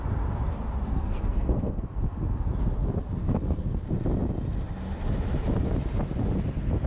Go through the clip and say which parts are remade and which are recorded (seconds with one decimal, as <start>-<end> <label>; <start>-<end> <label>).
0.0-0.9 recorded; 0.9-2.0 remade; 2.0-3.2 recorded; 3.2-3.8 remade; 3.8-6.9 recorded